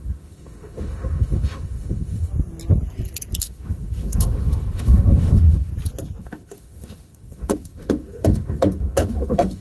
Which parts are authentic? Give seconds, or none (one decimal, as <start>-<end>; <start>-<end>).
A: 2.3-3.4; 5.7-6.2